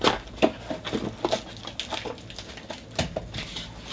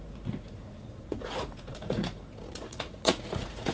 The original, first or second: first